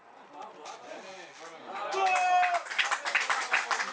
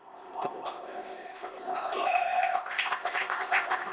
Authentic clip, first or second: first